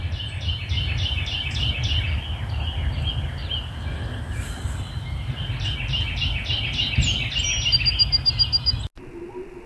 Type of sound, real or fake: real